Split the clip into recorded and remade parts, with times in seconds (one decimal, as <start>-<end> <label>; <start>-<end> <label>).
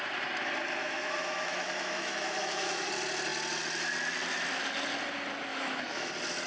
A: 0.0-0.8 recorded; 0.8-2.9 remade; 2.9-5.5 recorded; 5.5-6.1 remade; 6.1-6.5 recorded